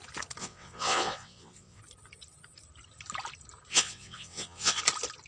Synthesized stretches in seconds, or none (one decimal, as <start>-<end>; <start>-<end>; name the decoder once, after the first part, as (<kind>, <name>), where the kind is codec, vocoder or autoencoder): 0.4-1.8 (vocoder, WaveNeXt); 3.7-4.8